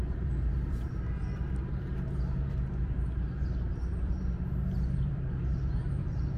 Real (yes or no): no